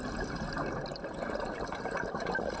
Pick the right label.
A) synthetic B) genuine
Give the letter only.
B